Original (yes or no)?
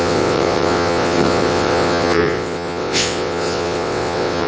no